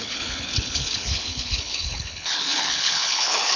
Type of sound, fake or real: fake